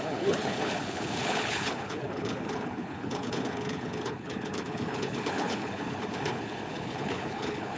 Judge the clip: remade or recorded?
remade